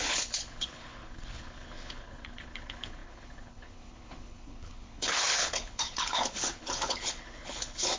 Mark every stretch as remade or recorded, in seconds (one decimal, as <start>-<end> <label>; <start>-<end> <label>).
0.0-8.0 remade